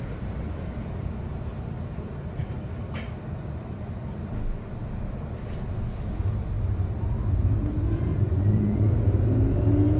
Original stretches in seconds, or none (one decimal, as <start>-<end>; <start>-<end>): 0.0-8.1; 8.9-10.0

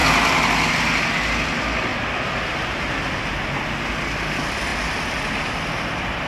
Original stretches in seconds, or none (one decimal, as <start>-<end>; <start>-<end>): 0.0-6.3

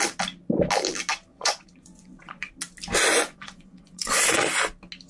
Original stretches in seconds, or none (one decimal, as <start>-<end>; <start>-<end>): 0.0-1.3; 2.5-3.1; 4.2-5.1

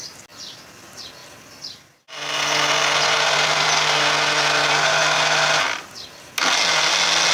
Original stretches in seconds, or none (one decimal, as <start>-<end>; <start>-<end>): 0.0-7.3